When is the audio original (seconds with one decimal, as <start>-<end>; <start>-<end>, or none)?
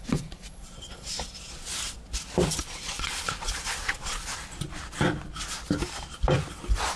1.7-2.6; 4.3-7.0